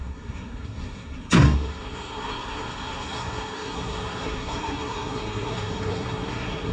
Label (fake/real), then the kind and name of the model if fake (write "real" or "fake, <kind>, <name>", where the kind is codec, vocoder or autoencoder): fake, codec, SNAC